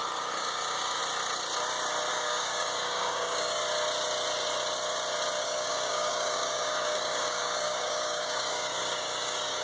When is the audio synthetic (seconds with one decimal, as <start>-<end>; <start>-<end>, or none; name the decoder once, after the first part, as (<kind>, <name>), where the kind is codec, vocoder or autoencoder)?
0.0-1.0 (codec, DAC); 2.1-3.6; 5.4-9.6